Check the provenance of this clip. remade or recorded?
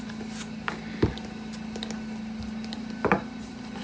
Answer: recorded